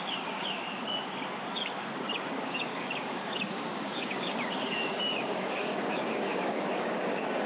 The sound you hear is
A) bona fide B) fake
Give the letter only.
B